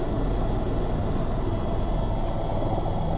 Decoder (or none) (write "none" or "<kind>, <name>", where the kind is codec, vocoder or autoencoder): none